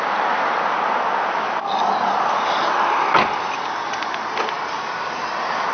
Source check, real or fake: real